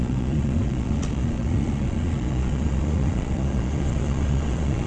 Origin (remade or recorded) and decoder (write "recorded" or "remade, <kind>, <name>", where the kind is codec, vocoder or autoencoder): remade, vocoder, Vocos